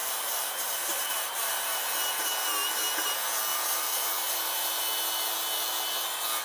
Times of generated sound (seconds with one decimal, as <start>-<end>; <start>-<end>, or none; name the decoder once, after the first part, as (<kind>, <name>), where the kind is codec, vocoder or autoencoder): 0.0-1.8 (vocoder, BigVGAN v2); 3.5-4.8